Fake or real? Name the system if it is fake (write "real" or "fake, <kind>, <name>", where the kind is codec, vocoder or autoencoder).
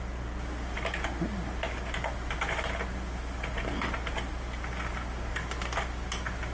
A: real